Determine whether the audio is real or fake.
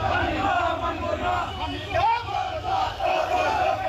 fake